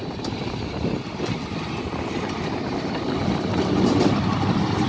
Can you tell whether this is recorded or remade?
recorded